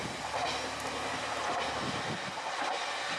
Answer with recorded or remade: recorded